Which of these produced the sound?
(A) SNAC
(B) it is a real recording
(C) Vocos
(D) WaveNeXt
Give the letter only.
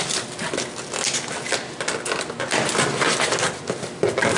B